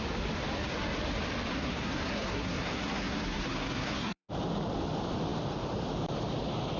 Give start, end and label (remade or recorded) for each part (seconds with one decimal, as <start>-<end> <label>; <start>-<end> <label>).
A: 0.0-1.5 recorded; 1.5-4.3 remade; 4.3-6.8 recorded